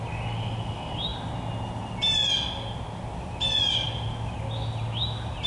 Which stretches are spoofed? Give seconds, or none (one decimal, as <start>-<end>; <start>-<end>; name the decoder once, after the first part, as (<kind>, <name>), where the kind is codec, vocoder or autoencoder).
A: none